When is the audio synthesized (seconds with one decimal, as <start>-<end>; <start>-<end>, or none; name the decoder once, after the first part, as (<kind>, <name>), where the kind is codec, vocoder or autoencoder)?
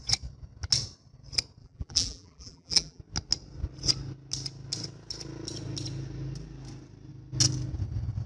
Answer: 1.6-3.0 (vocoder, BigVGAN v2)